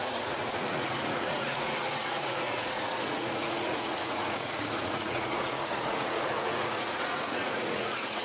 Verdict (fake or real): fake